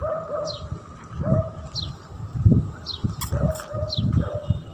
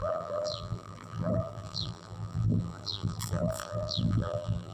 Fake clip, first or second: second